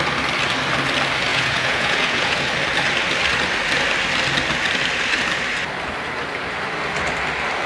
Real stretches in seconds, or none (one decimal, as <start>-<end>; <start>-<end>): 0.0-1.3; 2.5-7.7